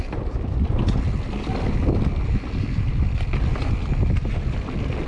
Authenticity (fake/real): real